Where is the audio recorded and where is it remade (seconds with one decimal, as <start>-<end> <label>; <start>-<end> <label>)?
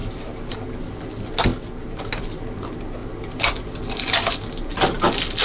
0.0-5.4 recorded